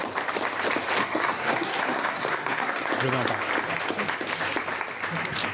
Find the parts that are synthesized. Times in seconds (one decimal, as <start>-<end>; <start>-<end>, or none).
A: 1.0-2.9